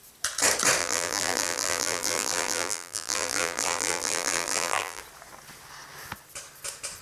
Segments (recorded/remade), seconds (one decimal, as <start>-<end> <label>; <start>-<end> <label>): 0.0-0.8 recorded; 0.8-5.0 remade; 5.0-7.0 recorded